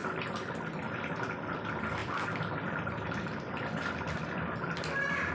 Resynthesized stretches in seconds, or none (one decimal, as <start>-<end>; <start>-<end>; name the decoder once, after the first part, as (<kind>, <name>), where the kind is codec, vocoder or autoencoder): 2.0-5.3 (vocoder, BigVGAN v2)